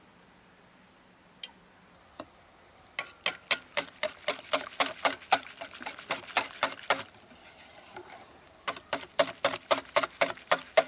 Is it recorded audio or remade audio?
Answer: recorded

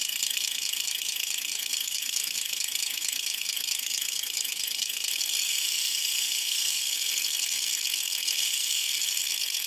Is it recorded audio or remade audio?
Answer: remade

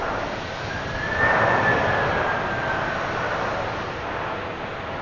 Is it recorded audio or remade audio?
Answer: recorded